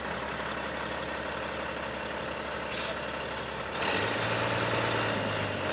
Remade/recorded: recorded